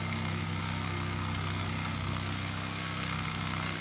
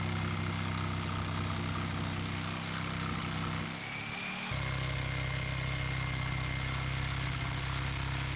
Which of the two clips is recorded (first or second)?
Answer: second